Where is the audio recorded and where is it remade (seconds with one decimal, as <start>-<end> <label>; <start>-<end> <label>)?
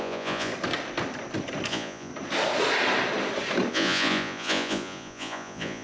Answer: 0.0-0.5 remade; 0.5-1.7 recorded; 1.7-2.1 remade; 2.1-3.7 recorded; 3.7-5.8 remade